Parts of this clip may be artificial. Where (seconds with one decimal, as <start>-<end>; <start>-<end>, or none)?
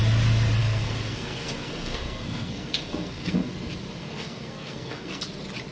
0.6-3.5; 4.0-5.2